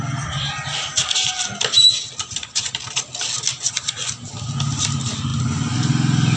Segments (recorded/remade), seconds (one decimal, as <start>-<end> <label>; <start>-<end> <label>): 0.0-6.4 recorded